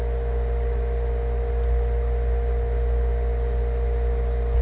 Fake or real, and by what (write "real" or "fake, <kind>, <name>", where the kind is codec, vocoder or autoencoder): real